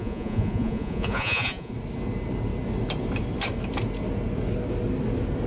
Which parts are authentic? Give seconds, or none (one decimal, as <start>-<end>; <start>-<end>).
1.7-5.5